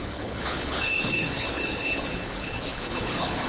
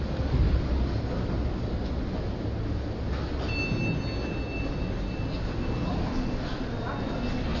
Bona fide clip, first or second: second